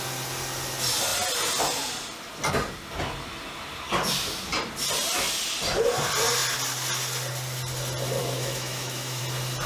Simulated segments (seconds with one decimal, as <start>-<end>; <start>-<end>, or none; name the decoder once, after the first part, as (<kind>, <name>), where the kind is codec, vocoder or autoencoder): 8.2-9.2 (autoencoder, DAC-VAE)